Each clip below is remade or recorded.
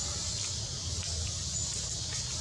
recorded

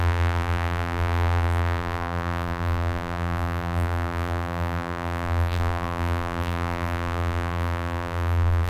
remade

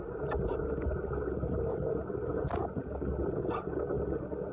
recorded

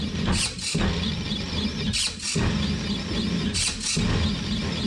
recorded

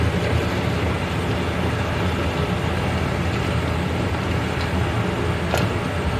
recorded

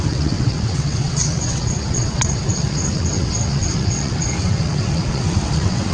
remade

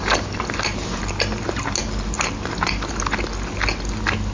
recorded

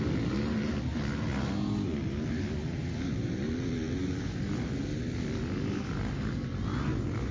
recorded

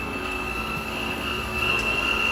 remade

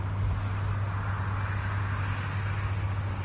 recorded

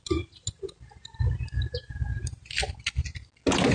recorded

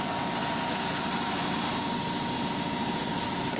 recorded